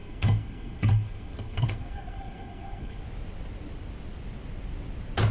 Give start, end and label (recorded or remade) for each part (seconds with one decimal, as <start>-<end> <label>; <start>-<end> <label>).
0.0-3.0 remade; 3.0-5.3 recorded

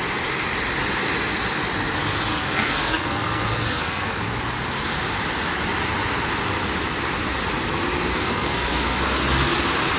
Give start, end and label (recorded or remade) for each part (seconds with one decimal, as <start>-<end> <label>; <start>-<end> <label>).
0.0-2.3 recorded; 2.3-4.2 remade; 4.2-8.1 recorded; 8.1-9.0 remade; 9.0-10.0 recorded